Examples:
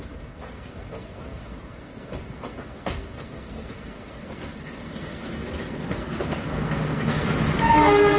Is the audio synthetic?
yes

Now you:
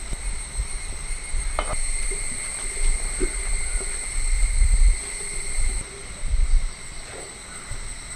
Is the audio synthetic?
no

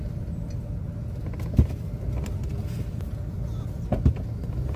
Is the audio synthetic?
no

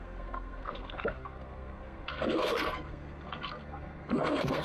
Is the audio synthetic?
yes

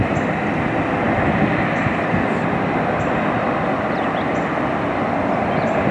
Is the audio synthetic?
no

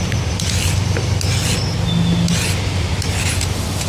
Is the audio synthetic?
no